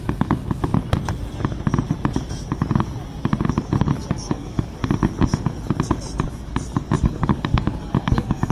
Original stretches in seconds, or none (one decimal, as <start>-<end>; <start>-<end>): 0.7-4.1; 4.8-7.0